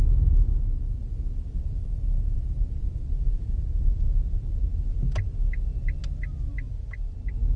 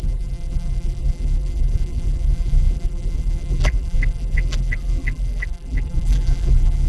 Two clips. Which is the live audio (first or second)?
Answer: first